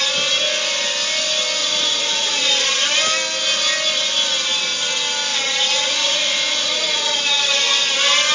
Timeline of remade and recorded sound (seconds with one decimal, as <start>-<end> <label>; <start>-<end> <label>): 0.0-1.6 recorded; 1.6-2.5 remade; 2.5-5.3 recorded; 5.3-7.9 remade; 7.9-8.3 recorded